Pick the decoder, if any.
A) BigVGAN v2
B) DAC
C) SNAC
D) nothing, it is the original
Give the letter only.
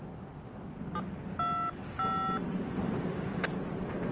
D